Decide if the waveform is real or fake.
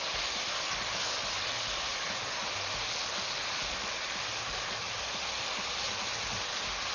real